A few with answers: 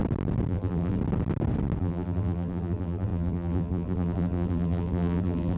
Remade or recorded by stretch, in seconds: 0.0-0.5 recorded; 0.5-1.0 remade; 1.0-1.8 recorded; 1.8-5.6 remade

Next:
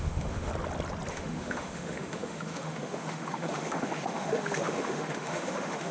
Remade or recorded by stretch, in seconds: 0.0-0.5 remade; 0.5-1.1 recorded; 1.1-5.9 remade

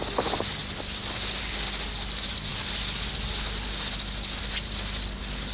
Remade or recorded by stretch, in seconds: 0.0-5.5 recorded